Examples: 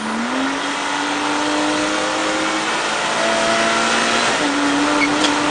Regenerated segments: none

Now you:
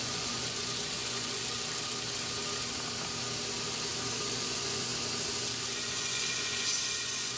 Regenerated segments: 0.0-1.4 (vocoder, Vocos); 4.2-4.9; 5.6-7.4